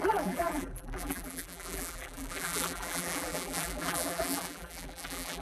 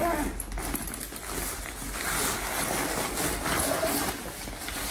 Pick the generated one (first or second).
first